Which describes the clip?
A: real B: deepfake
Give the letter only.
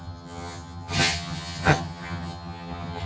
B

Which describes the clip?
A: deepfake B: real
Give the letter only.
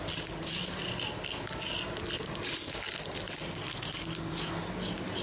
B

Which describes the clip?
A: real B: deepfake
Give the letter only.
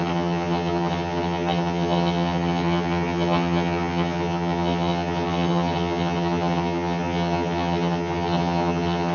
B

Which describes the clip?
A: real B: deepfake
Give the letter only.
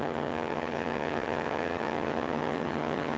B